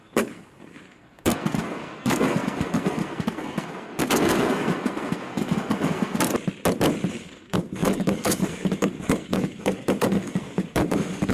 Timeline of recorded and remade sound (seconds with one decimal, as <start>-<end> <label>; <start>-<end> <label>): 0.0-6.3 remade; 6.3-7.1 recorded; 7.1-11.3 remade